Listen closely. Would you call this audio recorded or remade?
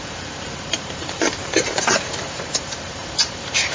remade